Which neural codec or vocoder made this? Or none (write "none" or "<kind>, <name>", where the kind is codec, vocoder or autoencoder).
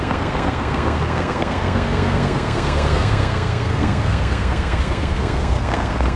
codec, SNAC